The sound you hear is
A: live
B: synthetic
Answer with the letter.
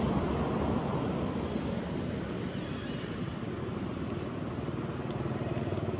A